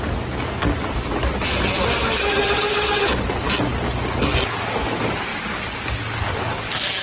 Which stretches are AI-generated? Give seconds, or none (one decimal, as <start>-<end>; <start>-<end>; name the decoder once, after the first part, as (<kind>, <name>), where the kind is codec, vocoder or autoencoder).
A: none